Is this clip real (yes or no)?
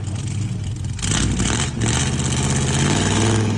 yes